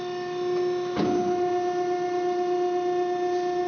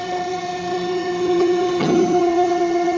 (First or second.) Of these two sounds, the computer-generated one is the second